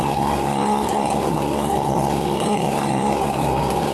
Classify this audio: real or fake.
fake